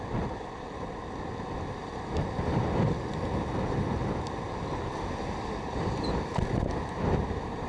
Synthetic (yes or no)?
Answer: no